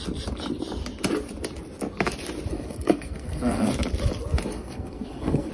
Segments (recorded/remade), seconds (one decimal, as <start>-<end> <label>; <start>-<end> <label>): 0.0-2.5 recorded; 2.5-3.7 remade; 3.7-4.5 recorded; 4.5-5.5 remade